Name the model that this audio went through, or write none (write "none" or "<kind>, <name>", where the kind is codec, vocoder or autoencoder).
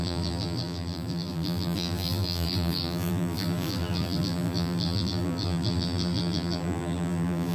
vocoder, BigVGAN v2